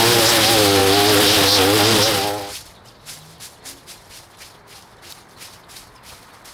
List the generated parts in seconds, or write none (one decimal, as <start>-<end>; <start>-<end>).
none